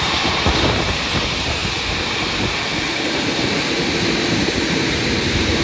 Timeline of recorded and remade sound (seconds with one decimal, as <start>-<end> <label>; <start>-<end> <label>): 0.0-1.6 remade; 1.6-3.4 recorded; 3.4-5.6 remade